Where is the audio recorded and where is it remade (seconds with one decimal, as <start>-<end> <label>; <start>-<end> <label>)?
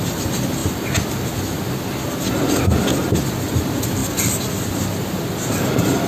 0.0-6.1 recorded